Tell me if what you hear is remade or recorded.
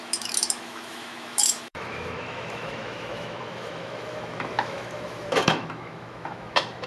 remade